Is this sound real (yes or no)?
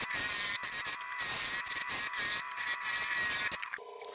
yes